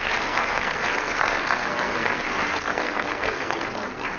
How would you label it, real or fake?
fake